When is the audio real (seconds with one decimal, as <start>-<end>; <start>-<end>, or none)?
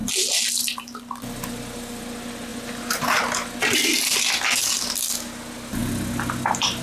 0.0-2.5; 3.2-6.8